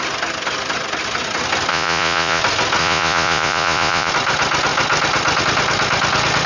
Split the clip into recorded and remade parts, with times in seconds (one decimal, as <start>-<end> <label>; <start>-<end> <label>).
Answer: 0.0-1.7 recorded; 1.7-2.4 remade; 2.4-2.8 recorded; 2.8-4.1 remade; 4.1-6.5 recorded